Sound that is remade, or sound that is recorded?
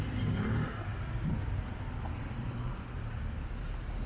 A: recorded